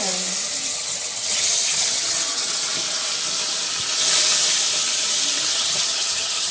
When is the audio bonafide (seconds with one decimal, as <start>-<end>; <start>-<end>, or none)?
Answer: 0.0-0.7; 2.5-5.5